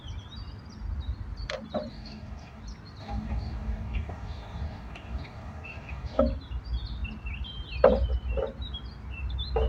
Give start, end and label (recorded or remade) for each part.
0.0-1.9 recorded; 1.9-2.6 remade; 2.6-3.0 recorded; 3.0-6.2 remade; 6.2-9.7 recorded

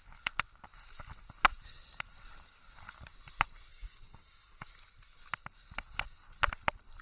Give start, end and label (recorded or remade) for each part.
0.0-3.7 recorded; 3.7-4.7 remade; 4.7-7.0 recorded

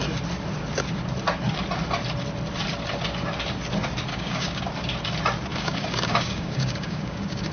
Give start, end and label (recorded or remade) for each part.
0.0-4.1 recorded; 4.1-4.6 remade; 4.6-5.5 recorded; 5.5-7.5 remade

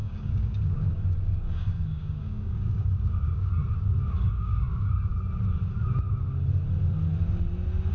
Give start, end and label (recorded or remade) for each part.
0.0-3.6 remade; 3.6-4.3 recorded; 4.3-5.1 remade; 5.1-7.9 recorded

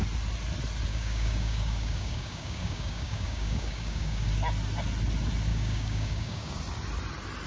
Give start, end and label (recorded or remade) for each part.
0.0-0.9 recorded; 0.9-4.3 remade; 4.3-5.5 recorded; 5.5-6.6 remade; 6.6-7.5 recorded

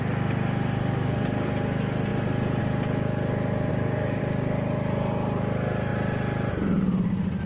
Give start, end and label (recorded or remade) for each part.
0.0-3.7 recorded; 3.7-4.2 remade; 4.2-7.5 recorded

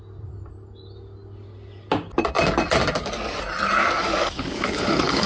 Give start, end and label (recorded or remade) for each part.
0.0-3.8 recorded; 3.8-5.3 remade